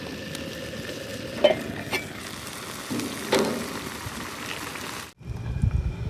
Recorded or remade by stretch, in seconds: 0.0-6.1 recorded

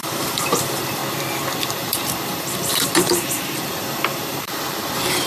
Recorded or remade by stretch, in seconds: 0.0-1.0 remade; 1.0-1.6 recorded; 1.6-5.3 remade

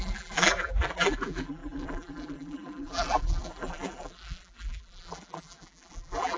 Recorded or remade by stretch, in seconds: 0.0-6.4 remade